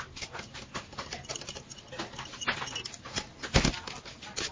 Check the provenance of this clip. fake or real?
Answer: real